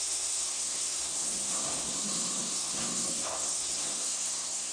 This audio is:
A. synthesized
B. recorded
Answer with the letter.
A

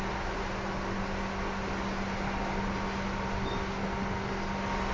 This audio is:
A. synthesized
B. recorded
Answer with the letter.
B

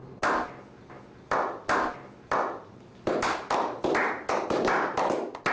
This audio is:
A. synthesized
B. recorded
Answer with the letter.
B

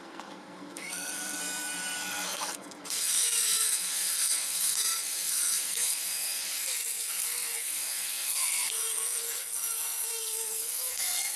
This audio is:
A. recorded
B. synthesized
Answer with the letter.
B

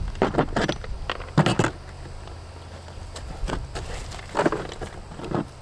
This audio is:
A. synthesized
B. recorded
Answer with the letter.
B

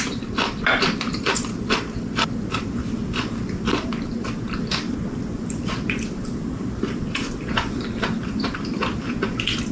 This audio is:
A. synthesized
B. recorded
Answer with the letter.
A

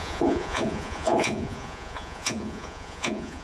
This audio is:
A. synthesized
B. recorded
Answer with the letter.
A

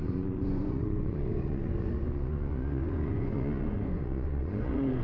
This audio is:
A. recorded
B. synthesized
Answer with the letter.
B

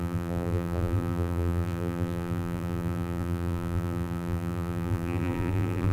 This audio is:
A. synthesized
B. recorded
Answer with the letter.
A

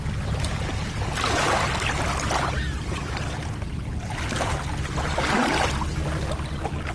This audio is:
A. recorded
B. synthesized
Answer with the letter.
A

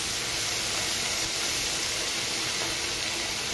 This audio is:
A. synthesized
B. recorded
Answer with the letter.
B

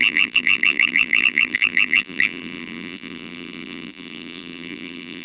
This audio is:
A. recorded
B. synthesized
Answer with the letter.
B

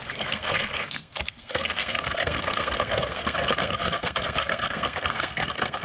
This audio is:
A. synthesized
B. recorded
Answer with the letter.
A